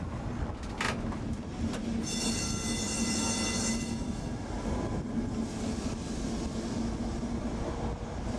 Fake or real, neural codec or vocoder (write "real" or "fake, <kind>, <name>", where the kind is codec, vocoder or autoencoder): real